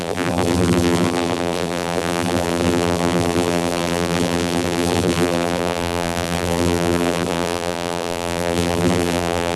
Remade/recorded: remade